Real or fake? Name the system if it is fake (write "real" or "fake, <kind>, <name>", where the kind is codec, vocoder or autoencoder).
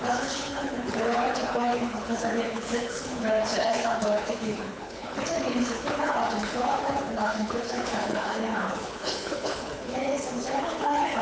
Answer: fake, codec, HILCodec